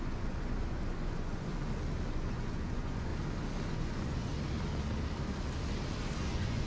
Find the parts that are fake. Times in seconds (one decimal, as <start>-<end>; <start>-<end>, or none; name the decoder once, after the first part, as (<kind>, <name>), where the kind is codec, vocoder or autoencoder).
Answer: 0.0-1.5 (vocoder, Vocos); 2.1-3.1; 3.7-4.3; 6.2-6.7